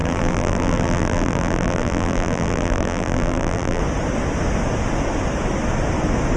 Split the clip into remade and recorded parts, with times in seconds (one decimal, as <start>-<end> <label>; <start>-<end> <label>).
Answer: 0.0-3.8 remade; 3.8-6.4 recorded